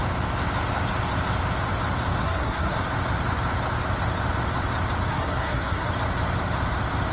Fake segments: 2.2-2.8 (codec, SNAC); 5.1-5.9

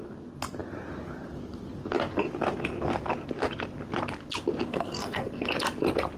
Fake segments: 4.7-5.5 (codec, SNAC)

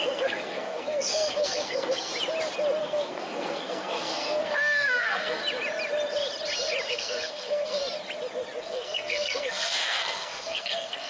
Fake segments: 0.0-2.1 (codec, SNAC); 2.8-5.4; 6.9-7.8; 8.6-11.1